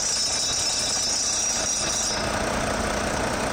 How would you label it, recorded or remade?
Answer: recorded